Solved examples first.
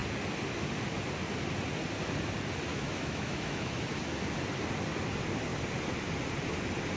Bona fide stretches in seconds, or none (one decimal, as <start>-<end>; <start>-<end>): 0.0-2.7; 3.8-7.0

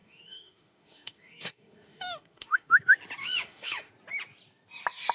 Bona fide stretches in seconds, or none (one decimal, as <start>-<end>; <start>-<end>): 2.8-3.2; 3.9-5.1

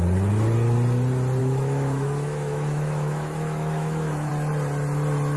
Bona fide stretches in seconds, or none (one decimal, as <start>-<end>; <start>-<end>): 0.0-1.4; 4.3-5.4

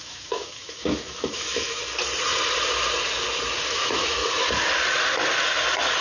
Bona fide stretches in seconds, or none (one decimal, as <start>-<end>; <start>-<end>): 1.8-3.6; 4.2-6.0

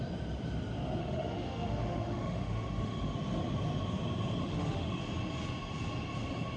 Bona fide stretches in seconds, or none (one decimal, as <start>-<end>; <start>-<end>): 0.0-1.0; 3.1-4.4; 5.0-6.6